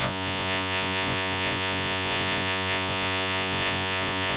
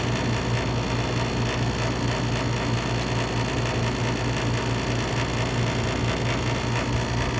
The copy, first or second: first